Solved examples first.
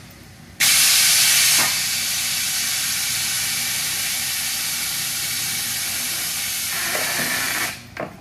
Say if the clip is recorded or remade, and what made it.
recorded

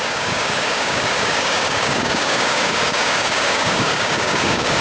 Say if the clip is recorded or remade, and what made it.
remade, codec, DAC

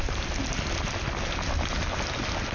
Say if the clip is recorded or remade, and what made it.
recorded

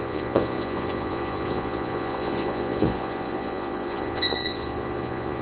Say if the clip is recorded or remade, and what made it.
remade, vocoder, Vocos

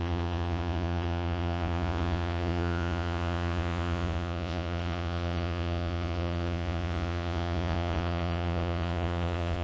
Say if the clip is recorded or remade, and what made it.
remade, vocoder, Vocos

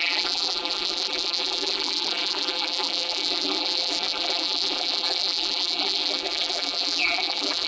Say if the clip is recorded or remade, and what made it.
remade, vocoder, BigVGAN v2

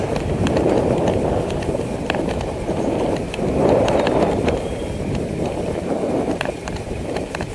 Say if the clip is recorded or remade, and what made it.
remade, vocoder, BigVGAN v2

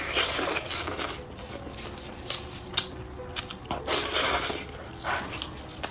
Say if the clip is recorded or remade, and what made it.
recorded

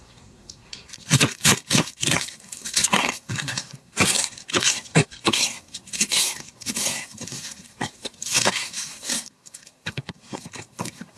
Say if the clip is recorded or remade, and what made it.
remade, codec, SNAC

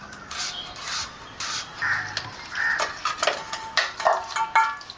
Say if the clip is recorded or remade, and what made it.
recorded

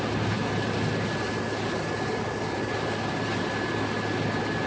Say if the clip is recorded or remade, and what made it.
recorded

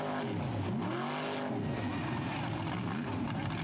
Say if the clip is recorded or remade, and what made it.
recorded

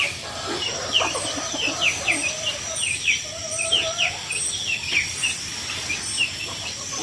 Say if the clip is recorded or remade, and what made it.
remade, vocoder, BigVGAN v2